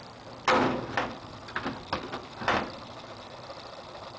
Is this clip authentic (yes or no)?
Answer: yes